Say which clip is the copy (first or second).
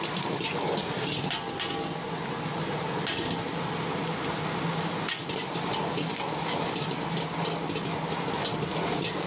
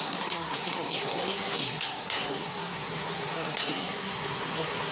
second